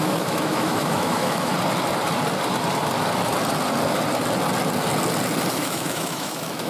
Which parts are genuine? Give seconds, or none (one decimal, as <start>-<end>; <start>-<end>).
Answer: 1.5-5.5